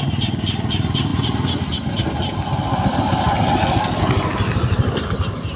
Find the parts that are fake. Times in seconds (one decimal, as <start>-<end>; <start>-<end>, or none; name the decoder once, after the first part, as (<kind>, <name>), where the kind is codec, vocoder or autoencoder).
none